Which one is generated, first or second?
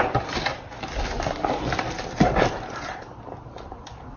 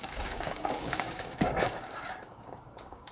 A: second